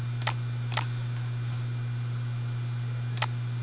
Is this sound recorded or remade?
recorded